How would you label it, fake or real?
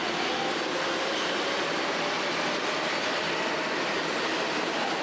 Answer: real